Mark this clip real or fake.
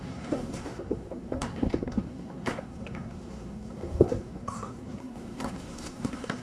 fake